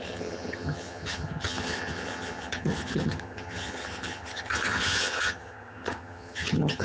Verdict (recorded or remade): remade